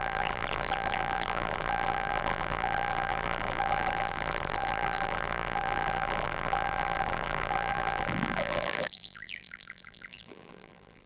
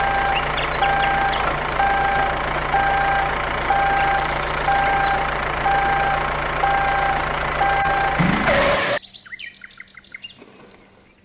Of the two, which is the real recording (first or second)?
second